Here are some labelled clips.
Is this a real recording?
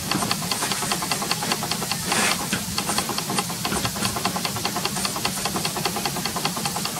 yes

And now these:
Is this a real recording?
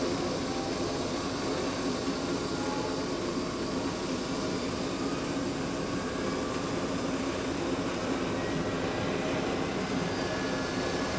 yes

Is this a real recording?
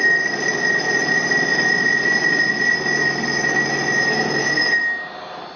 yes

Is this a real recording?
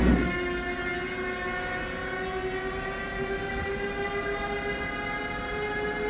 yes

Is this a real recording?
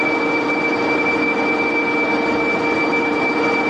yes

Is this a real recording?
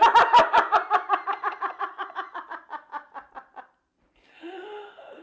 no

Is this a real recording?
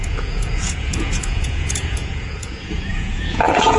no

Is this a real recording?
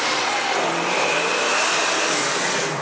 yes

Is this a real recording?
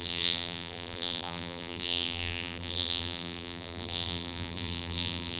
no